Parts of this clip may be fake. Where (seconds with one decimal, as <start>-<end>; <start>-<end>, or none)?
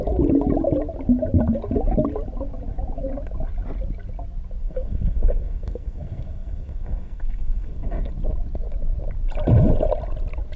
4.6-8.1